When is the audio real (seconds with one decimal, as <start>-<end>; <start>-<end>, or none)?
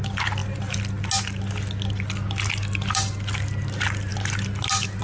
0.0-5.0